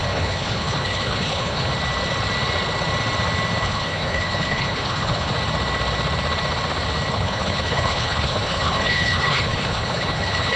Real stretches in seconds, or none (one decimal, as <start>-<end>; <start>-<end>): 1.7-3.6; 5.3-7.1